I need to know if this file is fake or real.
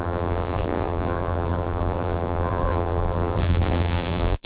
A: fake